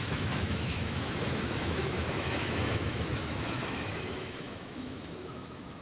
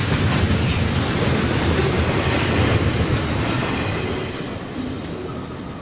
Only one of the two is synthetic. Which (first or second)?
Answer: first